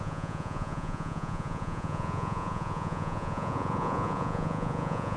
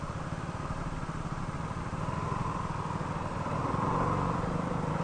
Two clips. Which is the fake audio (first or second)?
first